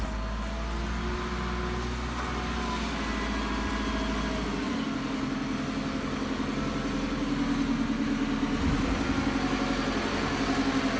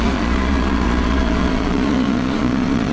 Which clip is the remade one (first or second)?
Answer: second